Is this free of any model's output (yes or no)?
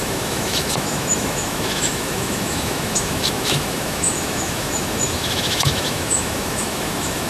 no